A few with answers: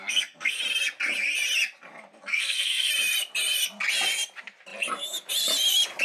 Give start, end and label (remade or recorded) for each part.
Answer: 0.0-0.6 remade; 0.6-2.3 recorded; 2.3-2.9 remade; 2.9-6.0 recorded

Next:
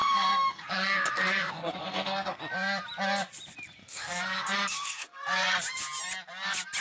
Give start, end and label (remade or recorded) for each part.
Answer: 0.0-2.4 remade; 2.4-3.8 recorded; 3.8-5.2 remade; 5.2-6.8 recorded

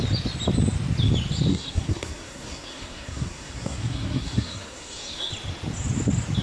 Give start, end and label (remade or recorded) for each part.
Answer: 0.0-1.5 recorded; 1.5-5.3 remade; 5.3-6.4 recorded